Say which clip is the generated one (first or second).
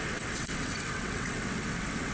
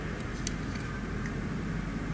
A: first